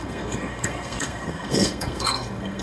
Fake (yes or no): yes